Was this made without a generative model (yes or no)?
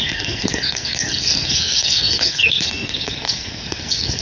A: no